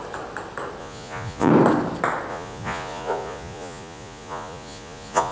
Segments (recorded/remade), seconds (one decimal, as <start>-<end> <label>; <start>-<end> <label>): 0.0-0.8 recorded; 0.8-1.5 remade; 1.5-2.3 recorded; 2.3-5.3 remade